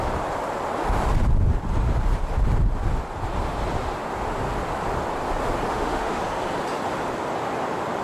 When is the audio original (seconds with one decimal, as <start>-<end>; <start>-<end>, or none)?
0.0-5.7; 6.2-8.0